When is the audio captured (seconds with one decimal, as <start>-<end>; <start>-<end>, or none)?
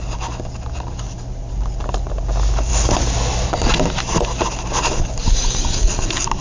0.0-6.4